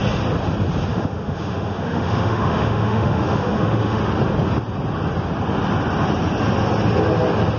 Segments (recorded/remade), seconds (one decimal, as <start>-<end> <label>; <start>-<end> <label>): 0.0-0.9 recorded; 0.9-4.0 remade; 4.0-7.6 recorded